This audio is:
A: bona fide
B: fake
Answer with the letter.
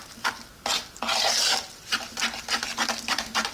A